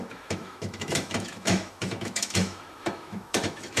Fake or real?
fake